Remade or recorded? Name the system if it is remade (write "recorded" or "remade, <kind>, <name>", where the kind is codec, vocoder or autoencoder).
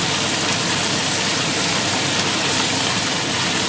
recorded